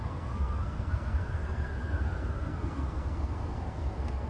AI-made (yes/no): yes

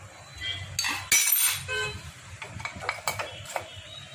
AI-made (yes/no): no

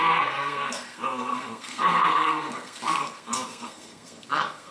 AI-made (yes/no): yes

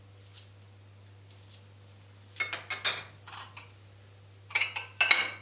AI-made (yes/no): no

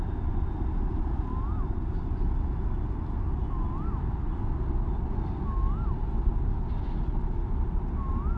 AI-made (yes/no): no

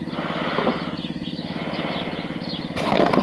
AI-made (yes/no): no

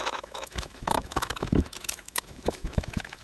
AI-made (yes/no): yes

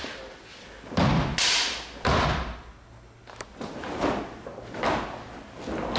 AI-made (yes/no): no